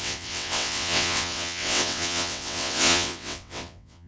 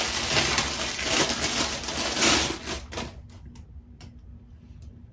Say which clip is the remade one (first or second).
first